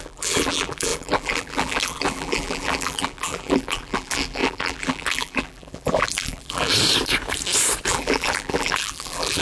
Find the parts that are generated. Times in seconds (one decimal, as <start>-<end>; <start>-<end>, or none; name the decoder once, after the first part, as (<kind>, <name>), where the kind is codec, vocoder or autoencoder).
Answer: 0.0-6.7 (vocoder, BigVGAN v2); 7.9-9.4